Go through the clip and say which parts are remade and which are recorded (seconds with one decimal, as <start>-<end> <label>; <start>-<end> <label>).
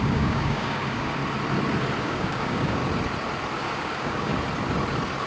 0.0-1.2 remade; 1.2-2.0 recorded; 2.0-2.8 remade; 2.8-3.6 recorded; 3.6-4.3 remade; 4.3-5.3 recorded